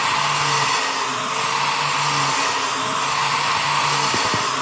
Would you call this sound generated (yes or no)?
no